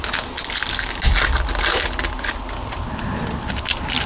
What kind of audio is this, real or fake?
real